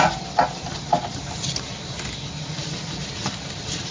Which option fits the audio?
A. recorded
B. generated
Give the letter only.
A